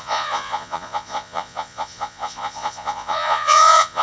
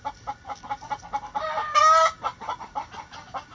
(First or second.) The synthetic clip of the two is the first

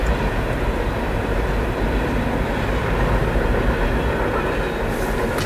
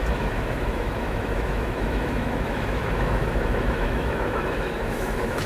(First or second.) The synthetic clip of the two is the second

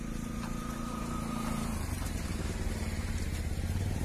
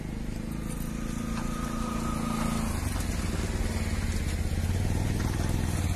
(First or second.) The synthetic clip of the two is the first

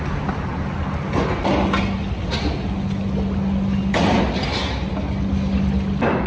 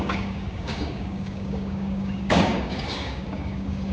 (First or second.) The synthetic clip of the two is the second